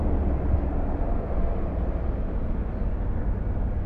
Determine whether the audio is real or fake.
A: real